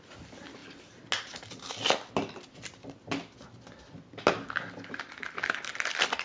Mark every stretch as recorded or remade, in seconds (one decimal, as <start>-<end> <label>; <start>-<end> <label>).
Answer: 0.0-6.2 recorded